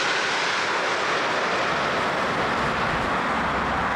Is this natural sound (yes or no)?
yes